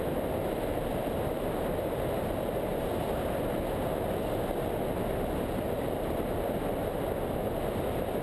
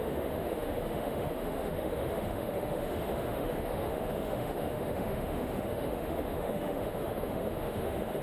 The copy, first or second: second